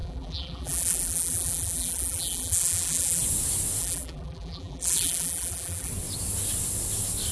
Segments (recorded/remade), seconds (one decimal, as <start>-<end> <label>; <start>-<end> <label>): 0.0-3.2 remade; 3.2-3.8 recorded; 3.8-5.9 remade; 5.9-7.3 recorded